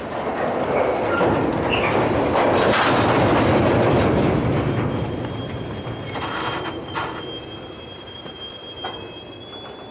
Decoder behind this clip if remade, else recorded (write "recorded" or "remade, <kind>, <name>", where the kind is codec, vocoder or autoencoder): recorded